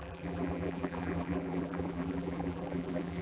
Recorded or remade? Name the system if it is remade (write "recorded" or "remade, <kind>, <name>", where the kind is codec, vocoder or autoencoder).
remade, vocoder, BigVGAN v2